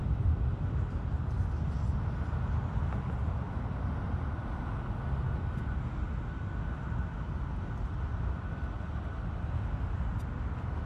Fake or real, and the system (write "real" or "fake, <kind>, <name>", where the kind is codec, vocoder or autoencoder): real